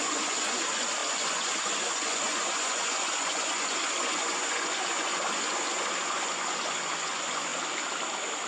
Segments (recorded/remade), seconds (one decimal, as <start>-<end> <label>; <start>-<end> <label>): 0.0-7.5 remade; 7.5-8.5 recorded